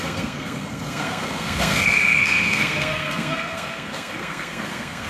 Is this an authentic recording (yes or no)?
no